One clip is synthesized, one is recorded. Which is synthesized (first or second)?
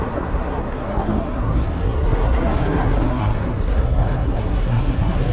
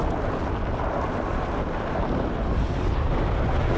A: first